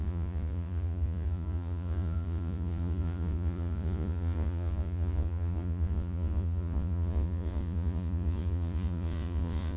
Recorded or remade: remade